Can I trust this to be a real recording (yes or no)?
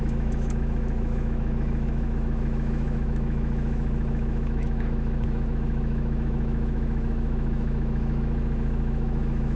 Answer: no